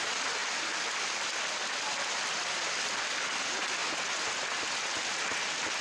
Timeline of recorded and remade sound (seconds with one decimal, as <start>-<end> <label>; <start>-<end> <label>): 0.0-0.4 recorded; 0.4-2.7 remade; 2.7-5.8 recorded